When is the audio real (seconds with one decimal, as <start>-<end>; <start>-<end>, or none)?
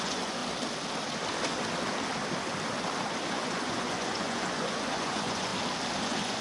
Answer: 0.4-3.3; 5.5-6.0